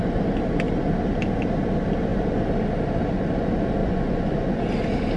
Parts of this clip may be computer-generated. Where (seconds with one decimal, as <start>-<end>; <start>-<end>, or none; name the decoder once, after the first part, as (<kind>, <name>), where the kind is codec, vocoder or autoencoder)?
3.8-4.6 (vocoder, Vocos)